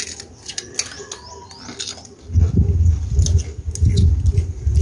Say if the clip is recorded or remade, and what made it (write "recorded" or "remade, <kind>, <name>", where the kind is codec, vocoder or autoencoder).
recorded